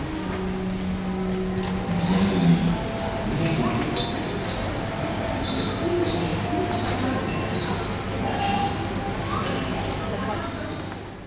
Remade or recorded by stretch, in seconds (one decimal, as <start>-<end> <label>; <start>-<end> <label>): 0.0-11.3 recorded